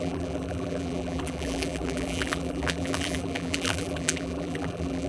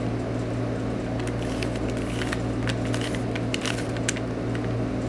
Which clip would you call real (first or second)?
second